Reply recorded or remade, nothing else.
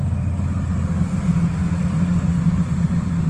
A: recorded